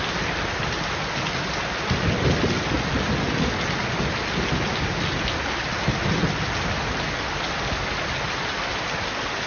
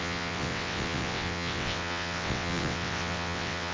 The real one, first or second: first